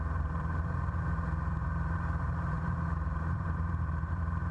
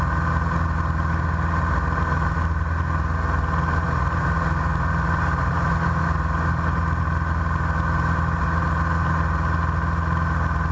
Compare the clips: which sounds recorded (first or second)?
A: second